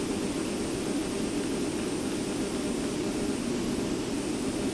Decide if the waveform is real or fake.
real